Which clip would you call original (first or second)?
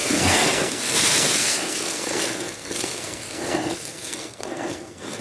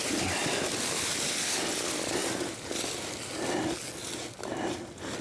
second